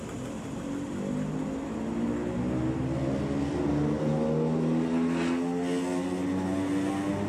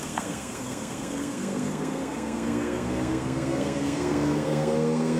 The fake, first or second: second